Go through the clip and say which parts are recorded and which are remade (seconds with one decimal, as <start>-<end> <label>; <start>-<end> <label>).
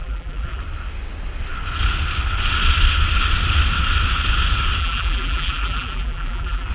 0.0-0.6 remade; 0.6-4.8 recorded; 4.8-6.7 remade